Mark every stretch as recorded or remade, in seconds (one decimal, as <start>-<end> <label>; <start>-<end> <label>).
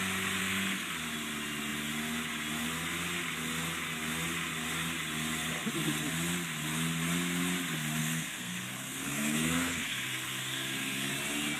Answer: 0.0-0.4 recorded; 0.4-0.9 remade; 0.9-8.0 recorded; 8.0-11.1 remade; 11.1-11.6 recorded